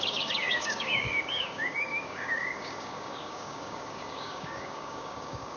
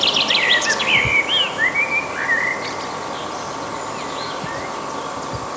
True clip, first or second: second